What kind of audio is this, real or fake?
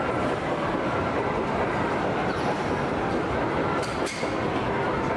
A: real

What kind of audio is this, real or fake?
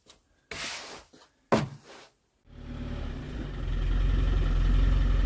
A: real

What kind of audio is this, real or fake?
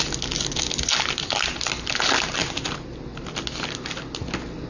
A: real